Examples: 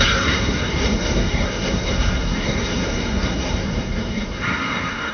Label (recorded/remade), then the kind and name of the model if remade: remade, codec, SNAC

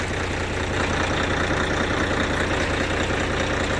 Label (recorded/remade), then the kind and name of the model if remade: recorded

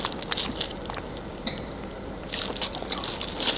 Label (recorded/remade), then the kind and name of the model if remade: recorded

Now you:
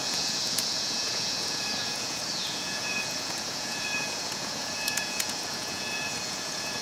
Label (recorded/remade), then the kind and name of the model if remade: remade, vocoder, Vocos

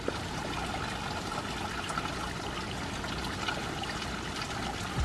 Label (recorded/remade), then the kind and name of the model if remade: recorded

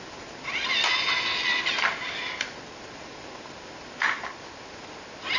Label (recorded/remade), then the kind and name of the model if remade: recorded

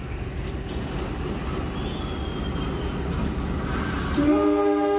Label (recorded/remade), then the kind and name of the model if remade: recorded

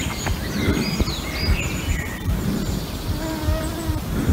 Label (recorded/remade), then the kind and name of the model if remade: remade, vocoder, BigVGAN v2